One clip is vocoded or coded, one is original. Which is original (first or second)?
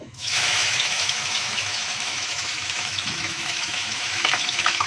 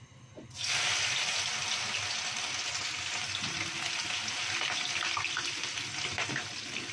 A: second